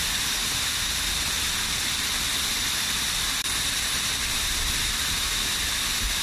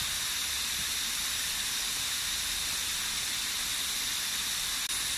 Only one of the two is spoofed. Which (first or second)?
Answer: first